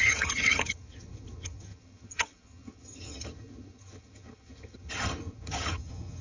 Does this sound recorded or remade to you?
remade